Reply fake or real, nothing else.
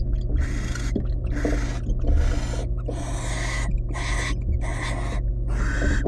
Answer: real